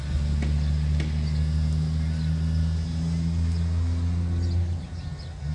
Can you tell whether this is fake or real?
real